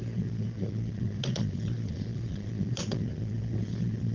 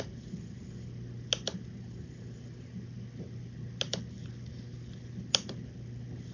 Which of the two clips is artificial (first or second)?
first